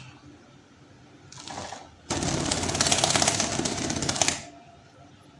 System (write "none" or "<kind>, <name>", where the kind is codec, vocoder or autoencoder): none